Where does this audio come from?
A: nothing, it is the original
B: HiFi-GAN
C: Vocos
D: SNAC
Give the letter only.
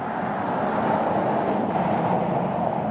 A